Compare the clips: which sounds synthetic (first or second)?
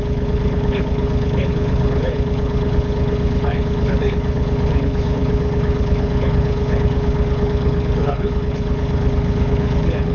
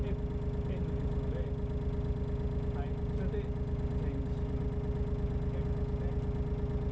first